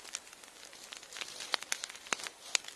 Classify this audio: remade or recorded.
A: recorded